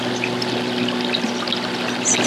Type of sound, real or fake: real